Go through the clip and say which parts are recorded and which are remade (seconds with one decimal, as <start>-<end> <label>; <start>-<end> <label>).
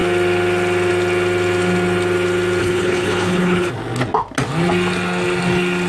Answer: 0.0-2.6 recorded; 2.6-3.7 remade; 3.7-5.9 recorded